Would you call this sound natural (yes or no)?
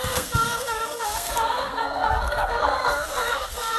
no